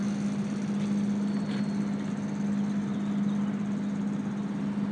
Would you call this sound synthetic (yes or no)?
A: no